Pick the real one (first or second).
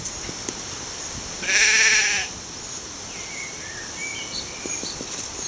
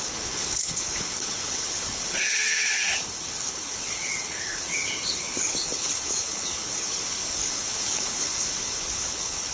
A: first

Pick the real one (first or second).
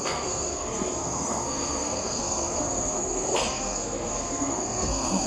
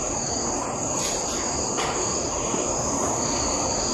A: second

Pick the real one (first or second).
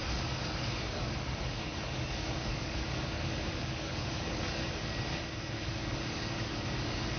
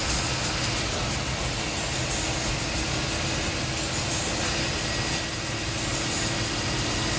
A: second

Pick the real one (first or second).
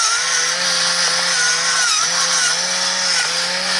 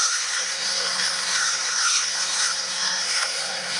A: first